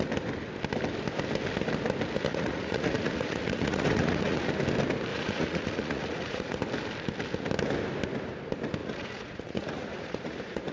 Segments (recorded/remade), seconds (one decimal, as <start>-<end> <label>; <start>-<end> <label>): 0.0-2.3 recorded; 2.3-4.5 remade; 4.5-5.1 recorded; 5.1-6.6 remade; 6.6-8.8 recorded; 8.8-10.7 remade